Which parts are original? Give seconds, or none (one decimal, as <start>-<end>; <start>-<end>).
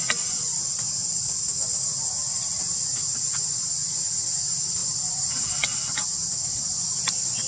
0.0-7.5